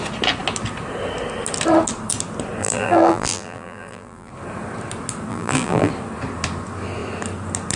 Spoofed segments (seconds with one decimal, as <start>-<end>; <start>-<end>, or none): 2.6-4.3; 5.3-5.9